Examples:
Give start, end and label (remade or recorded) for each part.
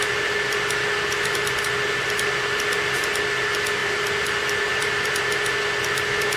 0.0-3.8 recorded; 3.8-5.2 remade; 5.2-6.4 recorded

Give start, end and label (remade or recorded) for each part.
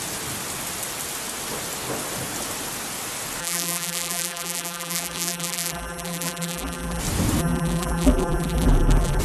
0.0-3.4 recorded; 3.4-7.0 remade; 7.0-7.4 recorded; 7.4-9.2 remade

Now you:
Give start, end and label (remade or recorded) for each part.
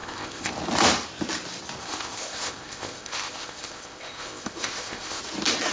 0.0-0.5 remade; 0.5-1.8 recorded; 1.8-5.2 remade; 5.2-5.7 recorded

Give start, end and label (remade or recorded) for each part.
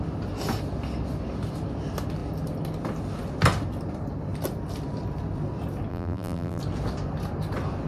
0.0-5.9 recorded; 5.9-6.6 remade; 6.6-7.9 recorded